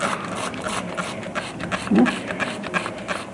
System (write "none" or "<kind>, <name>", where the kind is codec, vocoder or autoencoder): none